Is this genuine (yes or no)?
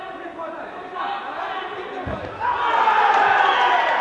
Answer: yes